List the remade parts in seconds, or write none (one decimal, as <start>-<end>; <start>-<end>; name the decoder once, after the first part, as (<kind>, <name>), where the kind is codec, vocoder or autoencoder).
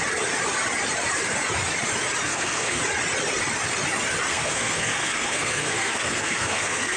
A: 2.3-2.8 (codec, SNAC); 4.3-7.0